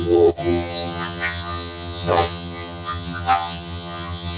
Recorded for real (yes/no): no